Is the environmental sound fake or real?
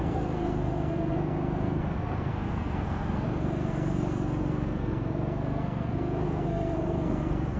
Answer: fake